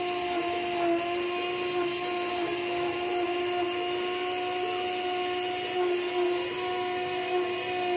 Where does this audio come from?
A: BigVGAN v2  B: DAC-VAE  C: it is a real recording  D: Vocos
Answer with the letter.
C